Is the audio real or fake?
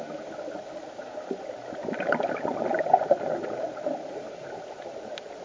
real